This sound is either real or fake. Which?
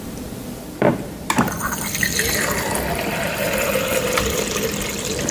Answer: fake